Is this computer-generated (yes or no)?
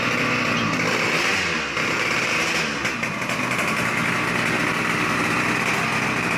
no